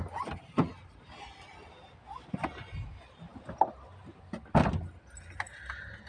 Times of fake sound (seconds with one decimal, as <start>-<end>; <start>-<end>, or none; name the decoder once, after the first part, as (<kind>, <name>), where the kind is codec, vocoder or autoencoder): none